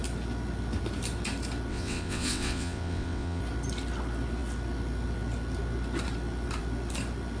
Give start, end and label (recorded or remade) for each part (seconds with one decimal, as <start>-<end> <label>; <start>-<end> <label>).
0.0-1.7 recorded; 1.7-3.4 remade; 3.4-7.4 recorded